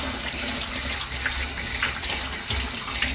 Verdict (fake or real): real